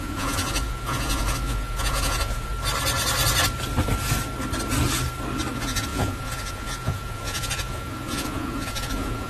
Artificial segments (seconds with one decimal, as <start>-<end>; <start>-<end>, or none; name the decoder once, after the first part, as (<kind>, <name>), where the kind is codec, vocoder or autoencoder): 0.0-2.5 (vocoder, Vocos); 5.5-9.3